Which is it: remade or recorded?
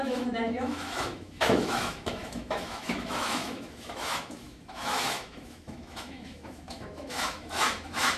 remade